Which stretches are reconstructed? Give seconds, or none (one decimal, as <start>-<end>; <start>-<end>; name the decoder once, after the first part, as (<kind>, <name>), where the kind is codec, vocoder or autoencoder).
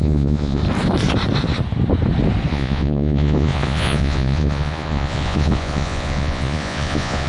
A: 0.0-0.6 (vocoder, Vocos); 2.5-7.3